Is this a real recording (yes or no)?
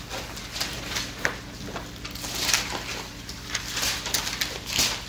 yes